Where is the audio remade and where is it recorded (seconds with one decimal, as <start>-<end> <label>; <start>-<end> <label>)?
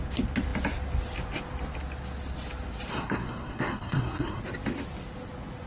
0.0-2.9 recorded; 2.9-4.4 remade; 4.4-5.7 recorded